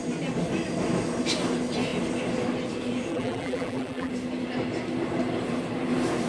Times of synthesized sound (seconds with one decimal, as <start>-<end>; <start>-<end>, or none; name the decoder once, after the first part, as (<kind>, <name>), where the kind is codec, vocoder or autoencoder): 3.1-4.1 (vocoder, BigVGAN v2)